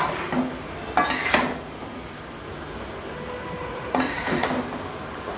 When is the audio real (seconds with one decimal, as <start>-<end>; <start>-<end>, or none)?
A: 0.0-3.6; 4.5-5.4